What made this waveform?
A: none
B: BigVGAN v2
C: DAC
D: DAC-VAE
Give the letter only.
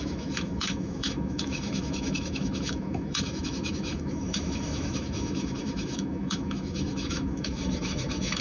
D